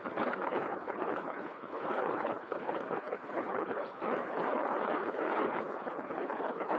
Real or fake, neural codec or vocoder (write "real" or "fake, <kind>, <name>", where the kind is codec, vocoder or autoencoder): fake, codec, HILCodec